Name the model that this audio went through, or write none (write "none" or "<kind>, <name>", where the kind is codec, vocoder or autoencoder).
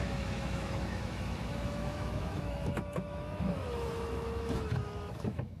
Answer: autoencoder, DAC-VAE